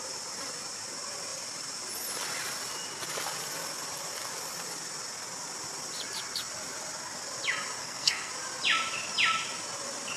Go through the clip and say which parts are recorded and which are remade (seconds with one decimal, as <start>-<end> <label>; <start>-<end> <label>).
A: 0.0-7.8 recorded; 7.8-8.3 remade; 8.3-10.2 recorded